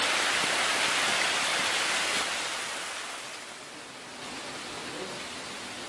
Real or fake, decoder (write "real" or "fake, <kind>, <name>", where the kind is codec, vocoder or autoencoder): real